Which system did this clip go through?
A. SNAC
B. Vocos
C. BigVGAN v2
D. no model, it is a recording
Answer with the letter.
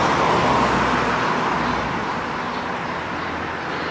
D